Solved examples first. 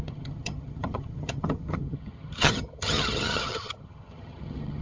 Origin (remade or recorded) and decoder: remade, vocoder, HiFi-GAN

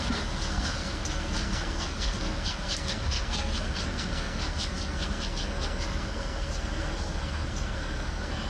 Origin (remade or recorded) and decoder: remade, codec, SNAC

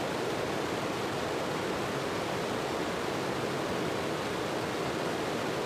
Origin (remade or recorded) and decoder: recorded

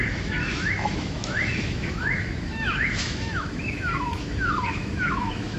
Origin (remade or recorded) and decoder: remade, autoencoder, DAC-VAE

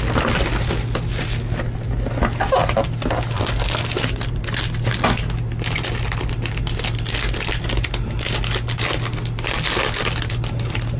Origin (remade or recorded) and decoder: recorded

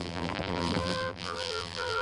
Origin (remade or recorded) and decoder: remade, vocoder, BigVGAN v2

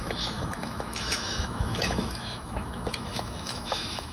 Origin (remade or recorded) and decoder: remade, autoencoder, DAC-VAE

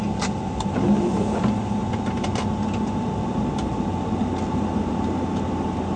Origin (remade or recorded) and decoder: recorded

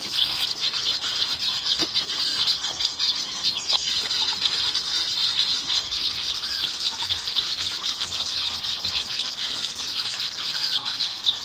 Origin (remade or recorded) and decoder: remade, codec, SNAC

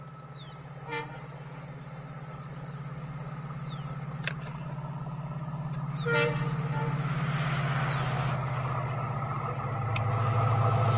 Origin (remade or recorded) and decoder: recorded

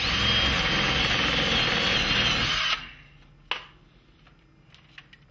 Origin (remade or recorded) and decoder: recorded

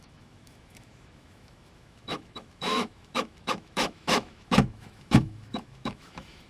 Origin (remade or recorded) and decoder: remade, autoencoder, DAC-VAE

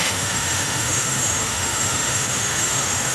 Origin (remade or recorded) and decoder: remade, autoencoder, DAC-VAE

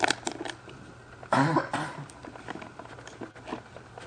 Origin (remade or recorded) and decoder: recorded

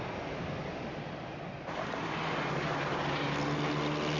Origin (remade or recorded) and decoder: recorded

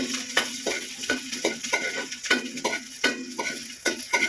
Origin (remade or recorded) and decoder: remade, vocoder, WaveNeXt